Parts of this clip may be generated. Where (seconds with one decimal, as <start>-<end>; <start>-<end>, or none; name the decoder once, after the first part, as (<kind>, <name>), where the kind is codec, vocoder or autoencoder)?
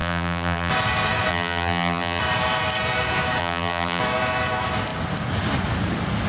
0.0-0.7 (vocoder, BigVGAN v2); 1.3-2.2; 3.4-4.0